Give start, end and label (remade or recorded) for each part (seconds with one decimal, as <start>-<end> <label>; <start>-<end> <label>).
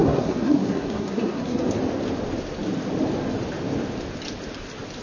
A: 0.0-1.6 remade; 1.6-5.0 recorded